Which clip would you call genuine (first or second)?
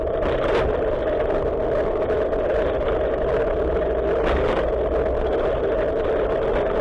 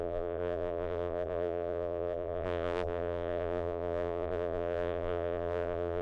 first